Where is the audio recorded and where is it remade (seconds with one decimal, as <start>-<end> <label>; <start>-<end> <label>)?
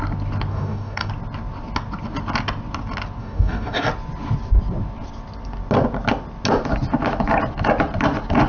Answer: 0.0-0.5 recorded; 0.5-1.1 remade; 1.1-3.2 recorded; 3.2-3.9 remade; 3.9-8.5 recorded